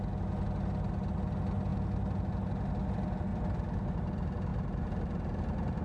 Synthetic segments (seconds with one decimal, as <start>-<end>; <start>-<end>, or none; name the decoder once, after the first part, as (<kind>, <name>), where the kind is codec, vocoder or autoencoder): 3.3-4.1 (vocoder, BigVGAN v2); 4.5-5.8